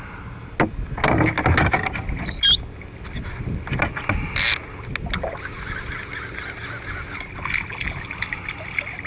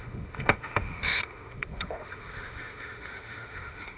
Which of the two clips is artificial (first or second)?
second